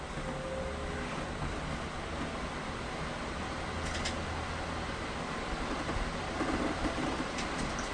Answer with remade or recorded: recorded